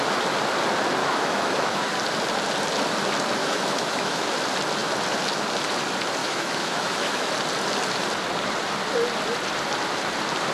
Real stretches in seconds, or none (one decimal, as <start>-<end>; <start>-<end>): 0.0-1.0; 1.9-3.4; 4.3-6.2; 7.3-10.5